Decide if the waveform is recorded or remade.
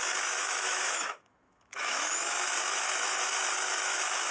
remade